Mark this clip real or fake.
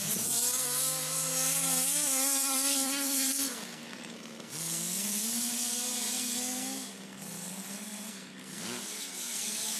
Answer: fake